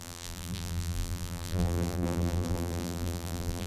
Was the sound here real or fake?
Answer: fake